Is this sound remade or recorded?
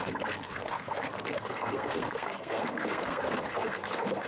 remade